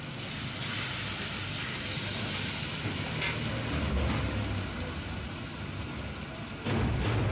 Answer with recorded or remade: recorded